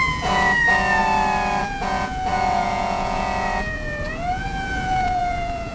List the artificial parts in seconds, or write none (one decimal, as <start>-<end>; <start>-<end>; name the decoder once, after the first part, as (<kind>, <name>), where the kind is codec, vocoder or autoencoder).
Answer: 0.0-1.0 (vocoder, Vocos); 1.6-5.7

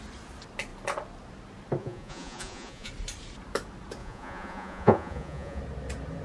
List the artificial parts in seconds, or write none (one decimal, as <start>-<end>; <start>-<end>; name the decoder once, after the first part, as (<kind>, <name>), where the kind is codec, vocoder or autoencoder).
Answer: 1.8-2.9 (vocoder, Vocos); 4.0-5.6

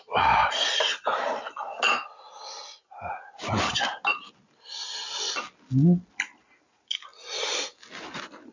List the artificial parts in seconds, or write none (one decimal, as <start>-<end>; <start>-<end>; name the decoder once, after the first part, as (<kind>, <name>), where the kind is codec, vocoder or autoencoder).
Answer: none

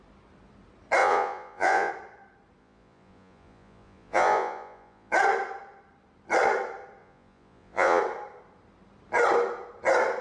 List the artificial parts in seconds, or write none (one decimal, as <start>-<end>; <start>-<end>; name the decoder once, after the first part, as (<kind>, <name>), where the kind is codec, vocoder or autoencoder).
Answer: 1.0-1.9 (vocoder, Vocos); 2.6-5.1; 7.0-8.0

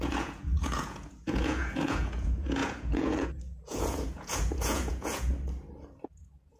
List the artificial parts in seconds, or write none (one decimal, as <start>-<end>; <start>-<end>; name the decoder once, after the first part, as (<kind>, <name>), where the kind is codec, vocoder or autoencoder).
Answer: 0.0-5.3 (vocoder, Vocos); 6.1-6.6